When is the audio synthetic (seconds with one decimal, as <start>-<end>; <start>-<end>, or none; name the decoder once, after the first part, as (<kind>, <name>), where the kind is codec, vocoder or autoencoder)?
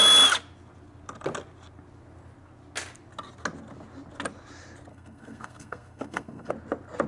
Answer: 4.9-6.5 (codec, SNAC)